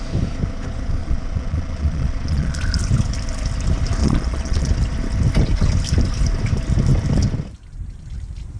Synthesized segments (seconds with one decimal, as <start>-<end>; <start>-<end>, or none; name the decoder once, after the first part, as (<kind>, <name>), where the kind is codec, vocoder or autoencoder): 1.0-2.6 (vocoder, Vocos); 4.0-4.7